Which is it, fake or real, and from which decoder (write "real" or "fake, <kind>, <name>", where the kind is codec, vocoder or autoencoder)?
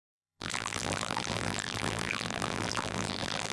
fake, vocoder, BigVGAN v2